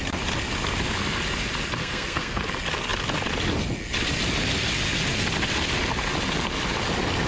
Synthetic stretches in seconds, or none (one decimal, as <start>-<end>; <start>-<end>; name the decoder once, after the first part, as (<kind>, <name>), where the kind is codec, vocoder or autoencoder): 1.8-2.4 (codec, SNAC)